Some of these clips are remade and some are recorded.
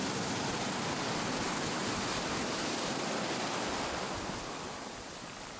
recorded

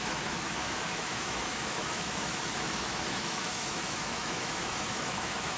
remade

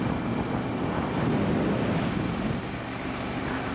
recorded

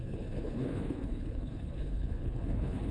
remade